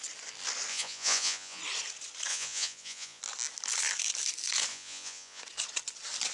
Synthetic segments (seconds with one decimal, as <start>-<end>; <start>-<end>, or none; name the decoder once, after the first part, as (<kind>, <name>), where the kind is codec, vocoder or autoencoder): 0.7-1.6 (vocoder, Vocos); 2.3-3.2; 4.7-5.4